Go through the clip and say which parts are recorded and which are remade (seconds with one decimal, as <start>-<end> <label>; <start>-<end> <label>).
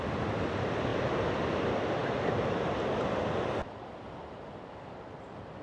0.0-5.6 recorded